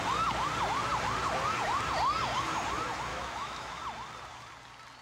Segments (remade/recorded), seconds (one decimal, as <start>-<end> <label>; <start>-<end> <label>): 0.0-3.1 recorded; 3.1-3.8 remade; 3.8-5.0 recorded